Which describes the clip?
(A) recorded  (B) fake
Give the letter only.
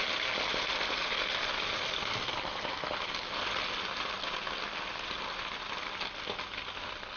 A